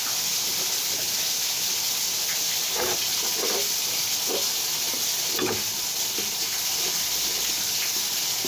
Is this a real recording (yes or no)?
yes